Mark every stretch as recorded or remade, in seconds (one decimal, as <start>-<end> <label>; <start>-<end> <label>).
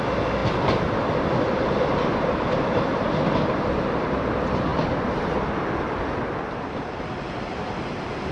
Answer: 0.0-8.3 remade